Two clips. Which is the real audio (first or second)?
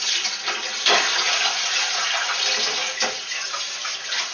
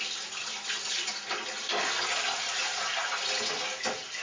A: second